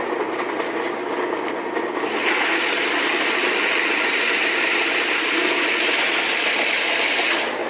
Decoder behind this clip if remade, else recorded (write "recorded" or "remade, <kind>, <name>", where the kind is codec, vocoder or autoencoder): recorded